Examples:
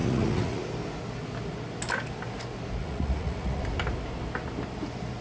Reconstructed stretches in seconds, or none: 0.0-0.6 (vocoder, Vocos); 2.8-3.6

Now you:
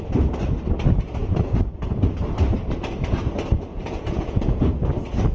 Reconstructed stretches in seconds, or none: 3.7-4.7 (vocoder, Vocos)